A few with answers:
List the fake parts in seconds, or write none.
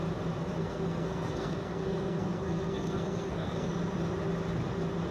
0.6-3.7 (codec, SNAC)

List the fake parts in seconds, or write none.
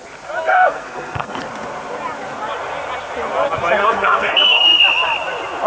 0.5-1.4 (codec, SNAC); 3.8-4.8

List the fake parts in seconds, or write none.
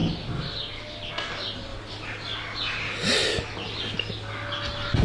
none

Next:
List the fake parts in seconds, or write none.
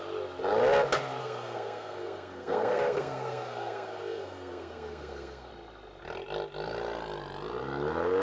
1.2-5.5 (codec, SNAC)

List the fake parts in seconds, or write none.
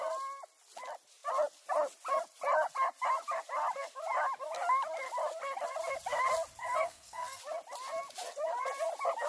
6.6-7.4 (codec, SNAC)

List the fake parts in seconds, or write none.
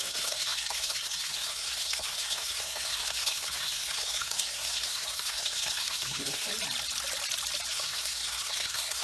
0.0-6.5 (codec, SNAC); 7.7-9.0